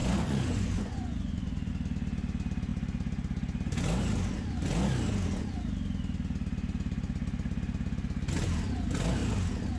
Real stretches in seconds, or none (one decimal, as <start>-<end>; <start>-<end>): 1.7-9.8